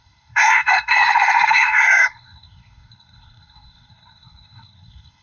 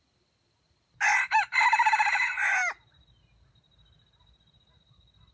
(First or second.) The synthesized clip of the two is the first